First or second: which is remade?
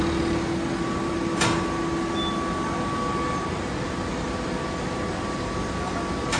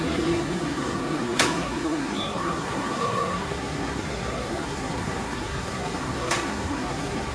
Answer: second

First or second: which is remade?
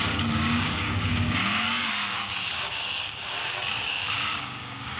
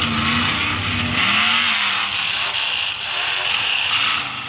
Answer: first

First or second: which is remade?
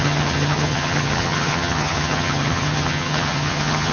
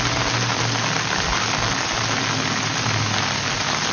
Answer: first